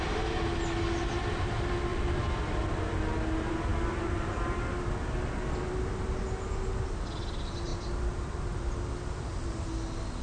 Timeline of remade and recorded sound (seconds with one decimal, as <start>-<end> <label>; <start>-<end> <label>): 0.0-1.9 recorded; 1.9-2.8 remade; 2.8-3.7 recorded; 3.7-6.4 remade; 6.4-7.7 recorded; 7.7-8.8 remade; 8.8-10.2 recorded